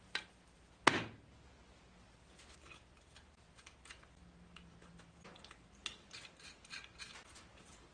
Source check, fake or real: real